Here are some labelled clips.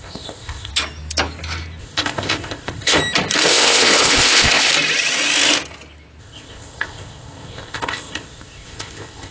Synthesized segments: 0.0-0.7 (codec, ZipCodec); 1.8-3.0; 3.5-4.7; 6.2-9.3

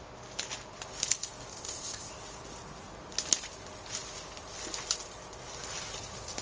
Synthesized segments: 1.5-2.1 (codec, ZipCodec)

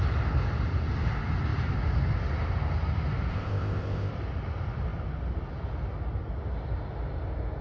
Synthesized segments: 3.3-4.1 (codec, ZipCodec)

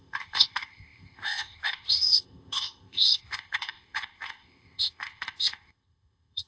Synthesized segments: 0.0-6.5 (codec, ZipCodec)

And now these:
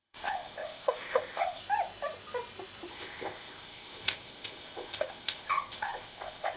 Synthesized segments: 0.0-1.6 (codec, ZipCodec); 2.9-6.6

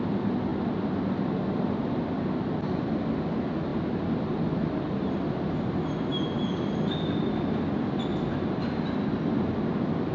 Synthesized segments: none

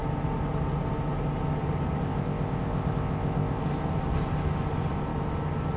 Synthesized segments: 2.0-3.6 (codec, ZipCodec)